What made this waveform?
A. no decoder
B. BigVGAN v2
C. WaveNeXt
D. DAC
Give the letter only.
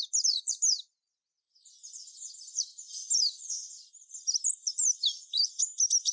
A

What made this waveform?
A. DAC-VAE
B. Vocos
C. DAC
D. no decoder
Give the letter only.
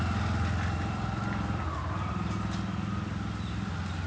D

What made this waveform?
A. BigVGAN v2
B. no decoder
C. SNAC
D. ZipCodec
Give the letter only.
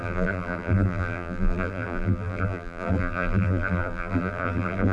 A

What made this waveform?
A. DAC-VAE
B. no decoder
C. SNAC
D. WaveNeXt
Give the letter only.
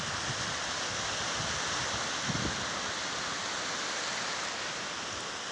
B